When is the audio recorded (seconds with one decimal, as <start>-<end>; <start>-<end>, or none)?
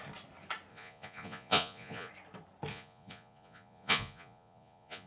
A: 0.0-0.7; 2.1-2.7